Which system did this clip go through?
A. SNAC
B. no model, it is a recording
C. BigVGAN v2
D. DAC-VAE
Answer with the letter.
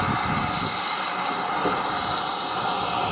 B